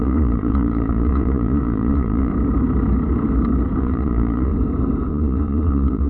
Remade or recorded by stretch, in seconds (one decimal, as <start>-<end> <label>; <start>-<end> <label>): 0.0-2.3 remade; 2.3-3.8 recorded; 3.8-4.5 remade; 4.5-5.1 recorded; 5.1-6.1 remade